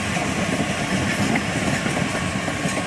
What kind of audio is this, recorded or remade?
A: remade